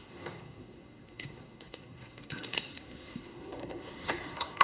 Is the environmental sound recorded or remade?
remade